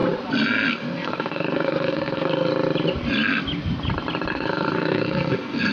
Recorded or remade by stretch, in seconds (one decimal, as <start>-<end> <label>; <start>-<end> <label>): 0.0-0.7 recorded; 0.7-2.5 remade; 2.5-4.3 recorded; 4.3-5.7 remade